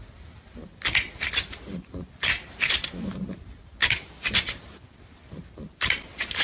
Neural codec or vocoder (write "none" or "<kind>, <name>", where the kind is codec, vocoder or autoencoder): none